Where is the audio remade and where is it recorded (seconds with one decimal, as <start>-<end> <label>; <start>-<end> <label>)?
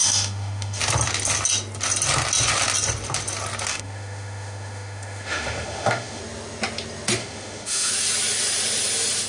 0.0-0.8 remade; 0.8-3.7 recorded; 3.7-6.2 remade; 6.2-7.2 recorded; 7.2-7.9 remade; 7.9-9.3 recorded